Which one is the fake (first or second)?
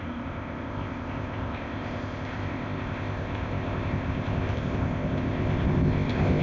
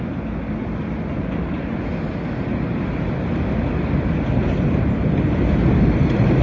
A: first